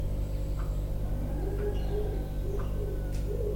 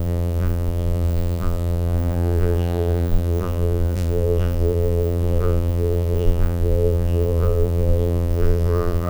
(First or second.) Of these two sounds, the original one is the first